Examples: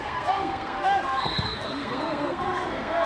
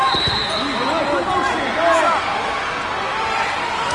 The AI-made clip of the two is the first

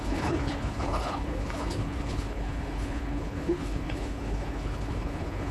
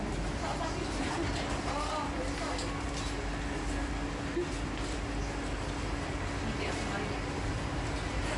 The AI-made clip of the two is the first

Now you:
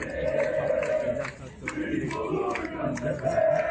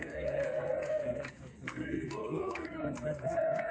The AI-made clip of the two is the second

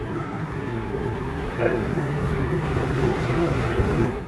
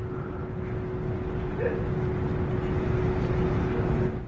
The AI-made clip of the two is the first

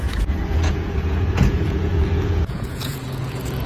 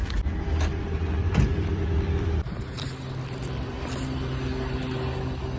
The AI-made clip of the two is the first